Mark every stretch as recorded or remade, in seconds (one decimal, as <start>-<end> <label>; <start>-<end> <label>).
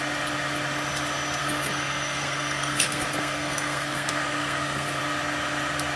0.0-1.4 recorded; 1.4-5.0 remade; 5.0-6.0 recorded